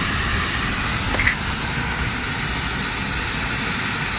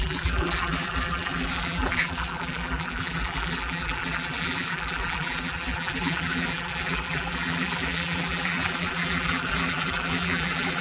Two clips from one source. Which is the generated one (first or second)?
second